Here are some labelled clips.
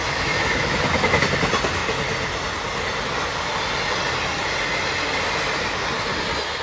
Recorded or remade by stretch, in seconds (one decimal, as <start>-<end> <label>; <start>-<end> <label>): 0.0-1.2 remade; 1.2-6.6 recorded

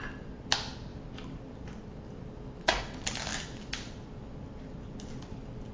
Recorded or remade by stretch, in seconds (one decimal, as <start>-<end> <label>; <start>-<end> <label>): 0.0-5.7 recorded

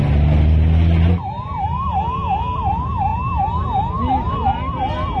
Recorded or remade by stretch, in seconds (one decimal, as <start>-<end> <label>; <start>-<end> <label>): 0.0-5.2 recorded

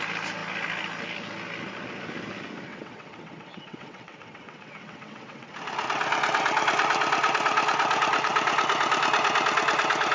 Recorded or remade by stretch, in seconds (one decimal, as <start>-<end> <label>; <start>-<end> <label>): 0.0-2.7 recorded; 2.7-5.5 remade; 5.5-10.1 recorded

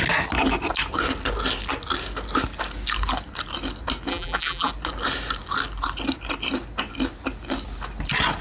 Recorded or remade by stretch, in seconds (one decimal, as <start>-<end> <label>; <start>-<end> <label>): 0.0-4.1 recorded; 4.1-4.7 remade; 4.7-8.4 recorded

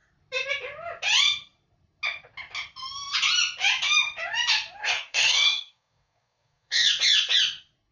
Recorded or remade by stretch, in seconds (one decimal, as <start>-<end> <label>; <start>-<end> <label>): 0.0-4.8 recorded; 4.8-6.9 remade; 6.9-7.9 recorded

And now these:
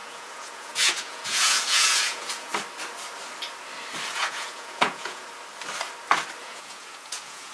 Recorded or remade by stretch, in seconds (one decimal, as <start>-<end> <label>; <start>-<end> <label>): 0.0-2.5 remade; 2.5-4.1 recorded; 4.1-5.2 remade; 5.2-6.4 recorded; 6.4-7.5 remade

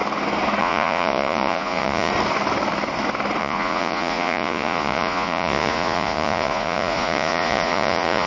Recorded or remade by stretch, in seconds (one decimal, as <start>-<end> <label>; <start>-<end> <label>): 0.0-0.6 recorded; 0.6-2.1 remade; 2.1-3.4 recorded; 3.4-8.3 remade